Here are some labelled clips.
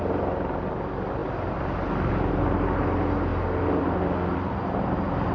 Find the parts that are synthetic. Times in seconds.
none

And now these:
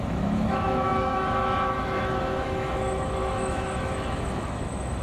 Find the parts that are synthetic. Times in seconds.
0.0-5.0

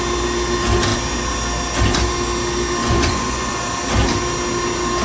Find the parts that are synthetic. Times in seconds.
2.8-3.6

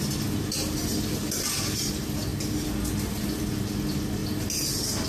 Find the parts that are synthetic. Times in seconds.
none